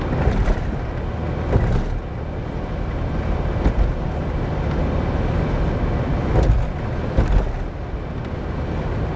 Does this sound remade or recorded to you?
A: recorded